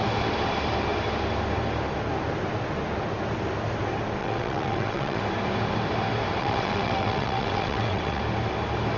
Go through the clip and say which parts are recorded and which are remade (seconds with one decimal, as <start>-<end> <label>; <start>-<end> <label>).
0.0-4.2 recorded; 4.2-5.2 remade; 5.2-6.4 recorded; 6.4-8.2 remade; 8.2-9.0 recorded